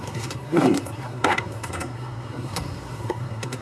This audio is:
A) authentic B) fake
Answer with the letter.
B